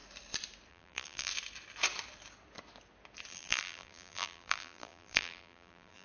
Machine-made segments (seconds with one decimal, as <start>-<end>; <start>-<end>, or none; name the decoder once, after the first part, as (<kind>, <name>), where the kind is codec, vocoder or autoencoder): 0.7-1.3 (vocoder, BigVGAN v2); 3.3-6.0